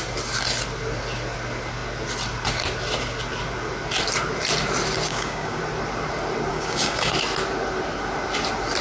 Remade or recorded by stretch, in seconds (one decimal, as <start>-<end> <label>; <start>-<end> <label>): 0.0-5.1 recorded; 5.1-5.6 remade; 5.6-6.5 recorded; 6.5-7.1 remade; 7.1-8.8 recorded